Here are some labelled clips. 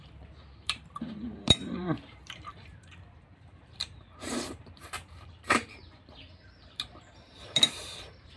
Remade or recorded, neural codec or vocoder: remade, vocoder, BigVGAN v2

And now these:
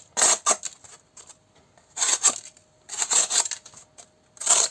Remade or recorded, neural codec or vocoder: recorded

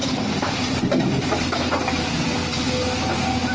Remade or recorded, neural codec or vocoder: recorded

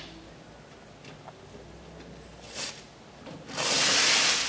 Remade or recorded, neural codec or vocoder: recorded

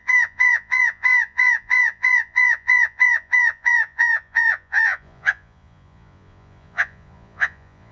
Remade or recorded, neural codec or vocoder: remade, vocoder, Vocos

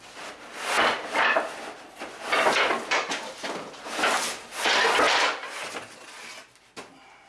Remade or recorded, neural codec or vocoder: recorded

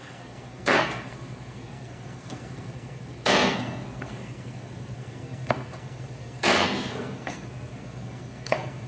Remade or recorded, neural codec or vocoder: remade, codec, SNAC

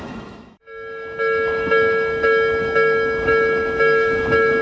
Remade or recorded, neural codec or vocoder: remade, autoencoder, DAC-VAE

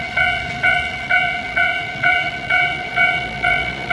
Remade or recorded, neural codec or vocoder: remade, vocoder, Vocos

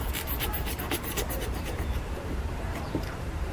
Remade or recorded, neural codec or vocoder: remade, vocoder, BigVGAN v2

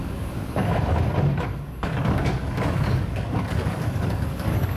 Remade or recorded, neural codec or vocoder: remade, codec, DAC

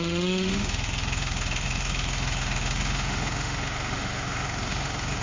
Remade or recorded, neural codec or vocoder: remade, autoencoder, DAC-VAE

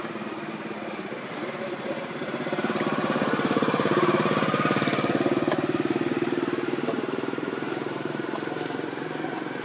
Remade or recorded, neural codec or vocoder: remade, vocoder, BigVGAN v2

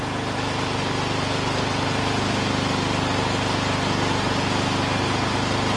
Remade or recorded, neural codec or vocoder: recorded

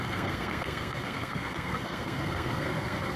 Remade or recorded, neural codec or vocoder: remade, codec, SNAC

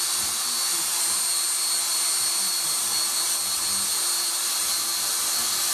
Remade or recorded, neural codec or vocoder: recorded